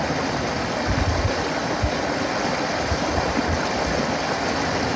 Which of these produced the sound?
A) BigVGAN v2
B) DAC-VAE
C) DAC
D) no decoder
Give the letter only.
D